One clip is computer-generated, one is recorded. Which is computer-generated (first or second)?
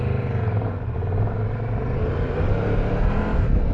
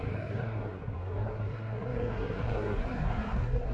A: second